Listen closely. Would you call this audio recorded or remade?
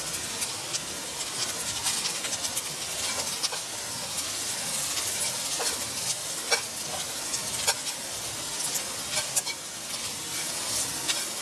recorded